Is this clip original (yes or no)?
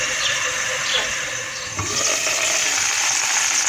yes